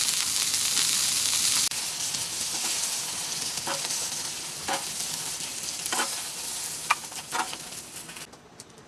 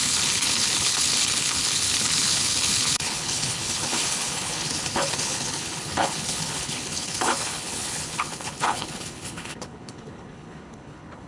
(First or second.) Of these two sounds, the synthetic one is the second